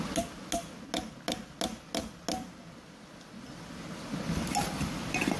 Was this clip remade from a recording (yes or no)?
no